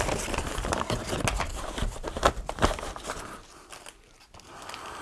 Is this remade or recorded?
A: recorded